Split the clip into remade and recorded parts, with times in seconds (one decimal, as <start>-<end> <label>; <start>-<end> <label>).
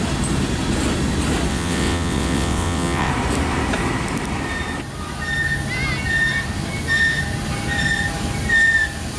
0.0-1.5 recorded; 1.5-3.1 remade; 3.1-9.2 recorded